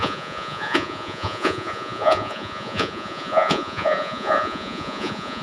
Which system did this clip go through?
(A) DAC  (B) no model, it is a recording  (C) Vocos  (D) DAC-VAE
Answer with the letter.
C